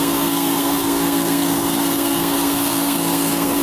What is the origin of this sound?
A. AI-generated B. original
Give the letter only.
A